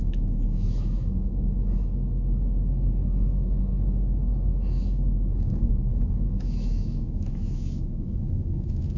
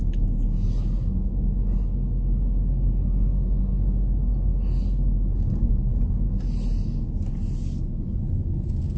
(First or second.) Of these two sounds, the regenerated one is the first